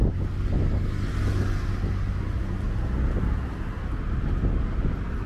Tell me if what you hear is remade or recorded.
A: recorded